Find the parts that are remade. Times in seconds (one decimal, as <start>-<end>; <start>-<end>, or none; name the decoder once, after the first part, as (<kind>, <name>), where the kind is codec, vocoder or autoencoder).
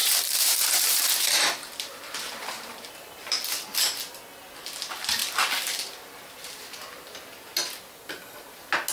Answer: 0.0-3.6 (vocoder, BigVGAN v2)